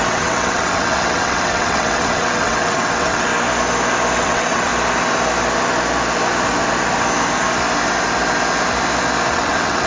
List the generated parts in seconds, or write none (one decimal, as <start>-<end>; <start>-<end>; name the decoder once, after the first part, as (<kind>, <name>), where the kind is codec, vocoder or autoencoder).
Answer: 0.0-3.3 (vocoder, WaveNeXt); 4.2-4.7; 9.3-9.9